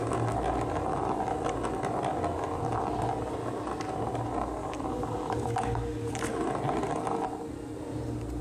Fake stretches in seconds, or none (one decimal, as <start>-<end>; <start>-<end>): 4.6-6.1

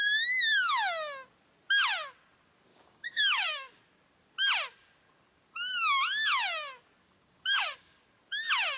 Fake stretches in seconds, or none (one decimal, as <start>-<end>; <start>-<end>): 2.7-3.8; 7.0-8.0

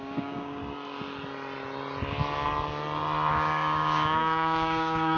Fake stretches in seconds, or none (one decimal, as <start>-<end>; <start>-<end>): 0.0-0.6; 3.3-5.2

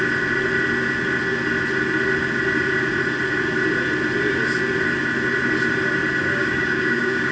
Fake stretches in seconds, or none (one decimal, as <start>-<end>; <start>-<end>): 6.3-7.3

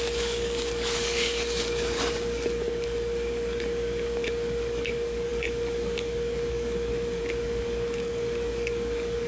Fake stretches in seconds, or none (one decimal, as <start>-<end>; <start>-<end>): 0.0-9.3

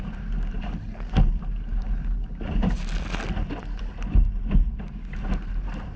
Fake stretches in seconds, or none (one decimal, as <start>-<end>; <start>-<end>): none

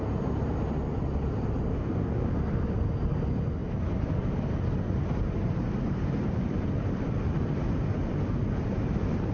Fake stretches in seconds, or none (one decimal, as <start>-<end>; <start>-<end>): 1.7-2.3